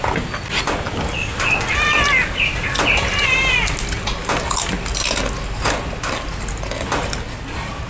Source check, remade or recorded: recorded